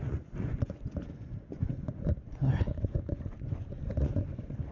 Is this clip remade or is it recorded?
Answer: remade